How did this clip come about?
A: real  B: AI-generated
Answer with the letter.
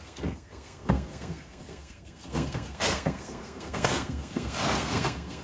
B